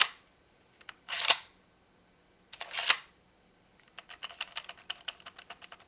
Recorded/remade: recorded